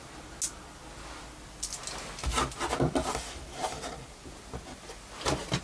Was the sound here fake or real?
real